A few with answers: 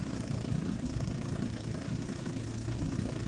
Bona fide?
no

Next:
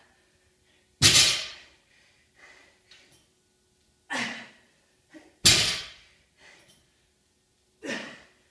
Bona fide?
yes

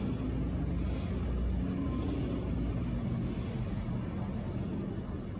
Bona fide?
yes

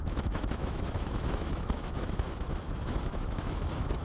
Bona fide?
no